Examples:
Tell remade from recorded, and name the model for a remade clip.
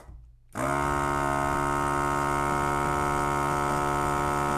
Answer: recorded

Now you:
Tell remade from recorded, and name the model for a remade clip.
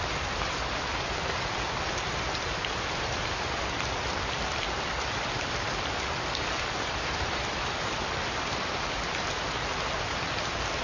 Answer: remade, vocoder, BigVGAN v2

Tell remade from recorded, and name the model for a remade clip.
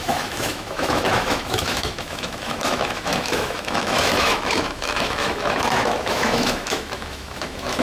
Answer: remade, autoencoder, DAC-VAE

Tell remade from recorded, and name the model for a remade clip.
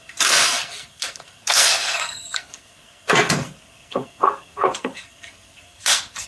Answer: remade, codec, SNAC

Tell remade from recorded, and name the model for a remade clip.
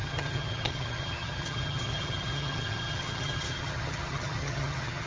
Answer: remade, vocoder, HiFi-GAN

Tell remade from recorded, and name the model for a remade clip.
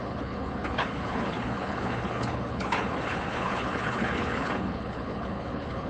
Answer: remade, codec, HILCodec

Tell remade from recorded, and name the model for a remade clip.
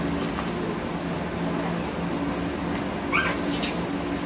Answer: recorded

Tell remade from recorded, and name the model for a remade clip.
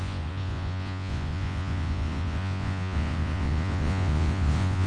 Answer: remade, vocoder, Vocos